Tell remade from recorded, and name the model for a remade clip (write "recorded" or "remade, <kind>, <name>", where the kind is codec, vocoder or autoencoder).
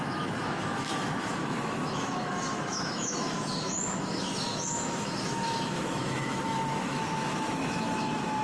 remade, autoencoder, DAC-VAE